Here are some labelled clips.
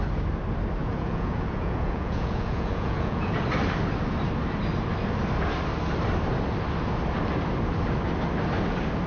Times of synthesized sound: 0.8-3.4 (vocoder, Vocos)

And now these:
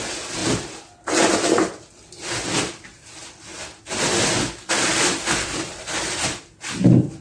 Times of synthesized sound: none

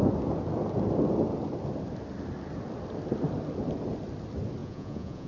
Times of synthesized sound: 4.6-5.3 (vocoder, Vocos)